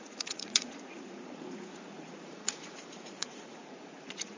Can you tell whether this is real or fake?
fake